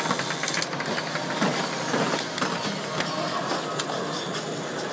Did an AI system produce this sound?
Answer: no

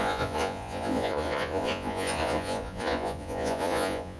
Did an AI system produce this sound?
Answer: yes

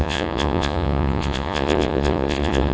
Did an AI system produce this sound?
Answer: yes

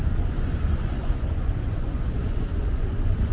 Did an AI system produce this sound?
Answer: yes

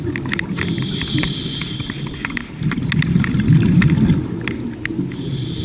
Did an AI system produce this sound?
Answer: no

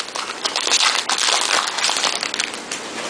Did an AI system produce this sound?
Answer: no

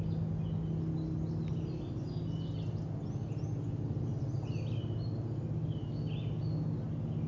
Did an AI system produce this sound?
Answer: no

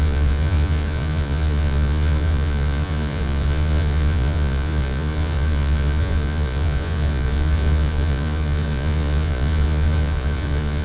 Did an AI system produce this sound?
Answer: yes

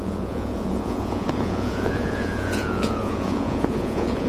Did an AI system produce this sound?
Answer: yes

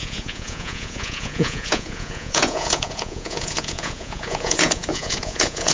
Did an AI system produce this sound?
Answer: yes